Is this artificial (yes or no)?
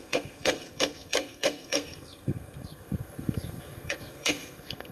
yes